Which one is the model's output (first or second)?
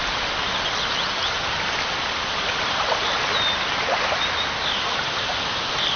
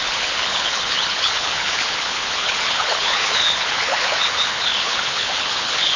second